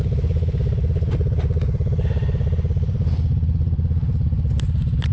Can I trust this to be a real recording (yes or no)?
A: yes